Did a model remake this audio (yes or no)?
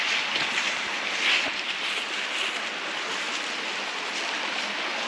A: no